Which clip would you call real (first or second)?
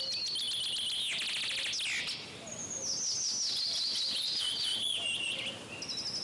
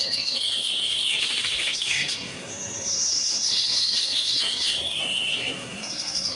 first